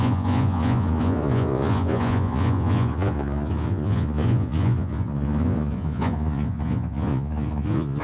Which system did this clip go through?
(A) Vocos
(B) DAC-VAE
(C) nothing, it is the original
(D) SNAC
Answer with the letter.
A